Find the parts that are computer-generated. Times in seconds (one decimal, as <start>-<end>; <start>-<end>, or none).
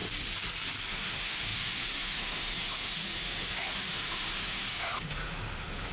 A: 0.9-5.9